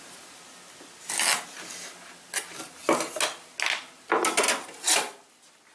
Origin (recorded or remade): recorded